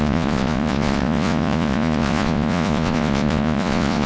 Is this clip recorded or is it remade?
remade